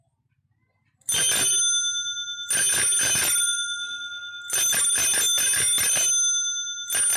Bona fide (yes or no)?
yes